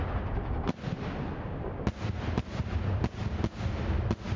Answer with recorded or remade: recorded